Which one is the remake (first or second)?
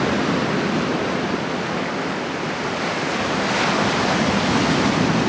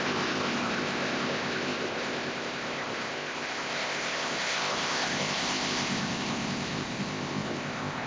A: second